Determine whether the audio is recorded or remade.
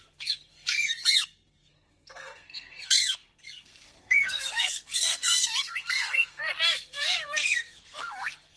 remade